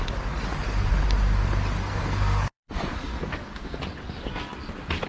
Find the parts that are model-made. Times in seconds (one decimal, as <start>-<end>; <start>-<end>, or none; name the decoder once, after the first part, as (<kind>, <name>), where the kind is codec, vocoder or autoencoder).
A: 1.8-3.8 (codec, SNAC)